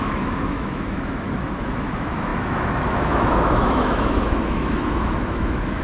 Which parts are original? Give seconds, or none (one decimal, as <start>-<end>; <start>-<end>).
none

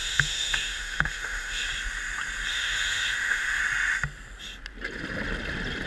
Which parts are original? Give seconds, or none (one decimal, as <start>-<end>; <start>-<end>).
1.6-2.5; 3.6-5.9

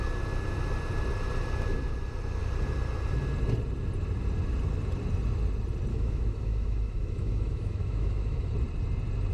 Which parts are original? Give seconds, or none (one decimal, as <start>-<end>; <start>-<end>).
0.0-5.9; 8.5-9.3

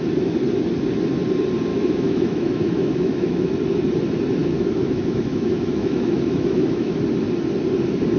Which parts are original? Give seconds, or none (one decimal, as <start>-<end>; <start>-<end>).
0.0-1.7; 3.5-4.4; 7.0-8.2

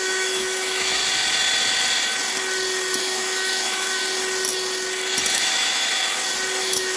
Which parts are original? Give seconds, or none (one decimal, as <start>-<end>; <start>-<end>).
1.0-3.0; 4.0-5.3; 6.0-6.6